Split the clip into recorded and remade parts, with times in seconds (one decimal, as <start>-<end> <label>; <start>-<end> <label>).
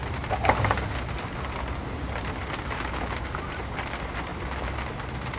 0.0-2.0 recorded; 2.0-2.5 remade; 2.5-5.4 recorded